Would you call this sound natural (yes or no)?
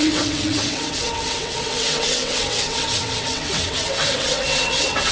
no